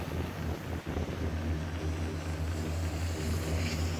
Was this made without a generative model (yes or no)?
yes